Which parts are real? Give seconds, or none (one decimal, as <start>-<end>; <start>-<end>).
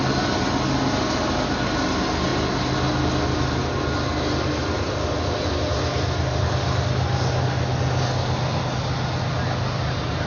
0.0-10.3